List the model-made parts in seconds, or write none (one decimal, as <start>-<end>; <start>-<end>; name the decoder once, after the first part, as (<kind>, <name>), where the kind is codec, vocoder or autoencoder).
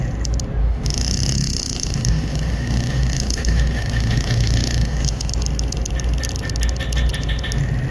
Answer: 0.6-5.3 (autoencoder, DAC-VAE)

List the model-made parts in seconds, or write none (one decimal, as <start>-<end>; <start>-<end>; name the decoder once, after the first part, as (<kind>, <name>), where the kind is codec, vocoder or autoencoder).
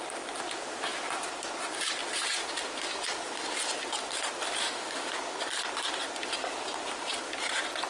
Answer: 4.6-5.1 (autoencoder, DAC-VAE)